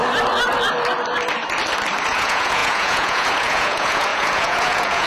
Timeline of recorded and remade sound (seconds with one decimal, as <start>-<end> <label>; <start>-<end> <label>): 0.0-2.1 recorded; 2.1-5.1 remade